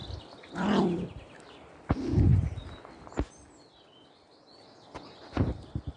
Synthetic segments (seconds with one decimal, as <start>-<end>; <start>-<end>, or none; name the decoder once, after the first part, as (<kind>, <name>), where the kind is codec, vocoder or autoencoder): none